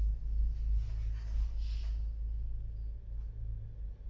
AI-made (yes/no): no